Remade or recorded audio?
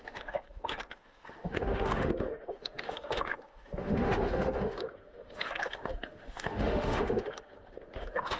remade